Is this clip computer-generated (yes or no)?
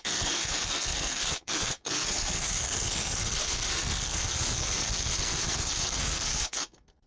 yes